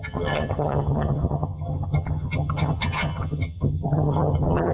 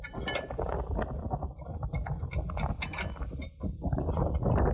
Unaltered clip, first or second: second